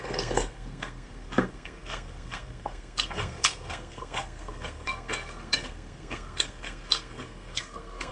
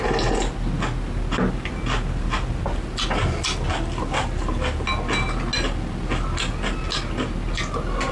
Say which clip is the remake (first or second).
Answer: first